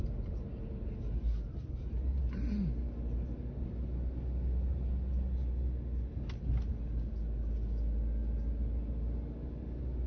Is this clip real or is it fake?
real